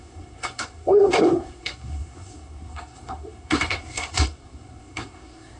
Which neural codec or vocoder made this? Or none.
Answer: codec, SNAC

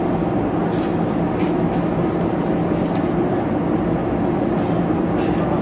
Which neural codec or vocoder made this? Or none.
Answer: none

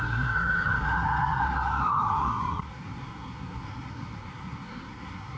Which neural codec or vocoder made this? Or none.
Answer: codec, SNAC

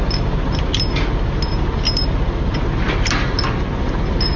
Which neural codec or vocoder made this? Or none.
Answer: none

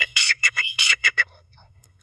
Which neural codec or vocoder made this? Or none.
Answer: codec, SNAC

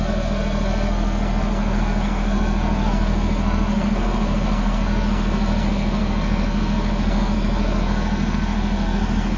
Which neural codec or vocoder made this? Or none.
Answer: codec, SNAC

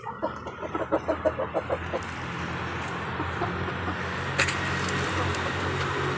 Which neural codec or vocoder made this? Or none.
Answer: none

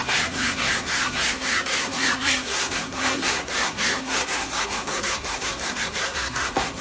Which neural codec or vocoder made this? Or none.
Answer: codec, SNAC